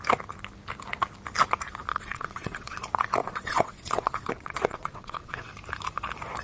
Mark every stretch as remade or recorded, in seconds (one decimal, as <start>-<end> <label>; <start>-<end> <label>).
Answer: 0.0-1.9 recorded; 1.9-2.8 remade; 2.8-3.2 recorded; 3.2-5.5 remade; 5.5-6.4 recorded